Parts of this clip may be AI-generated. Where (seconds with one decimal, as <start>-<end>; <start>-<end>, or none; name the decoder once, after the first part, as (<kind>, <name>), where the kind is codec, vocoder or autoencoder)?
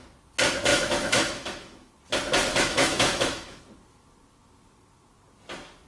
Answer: 0.7-1.9 (autoencoder, DAC-VAE); 2.5-3.6